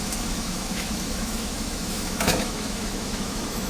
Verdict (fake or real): fake